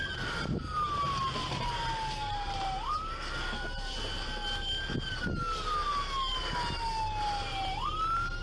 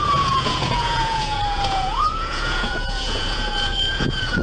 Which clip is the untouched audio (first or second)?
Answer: first